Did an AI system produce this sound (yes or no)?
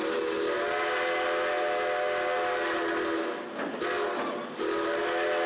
no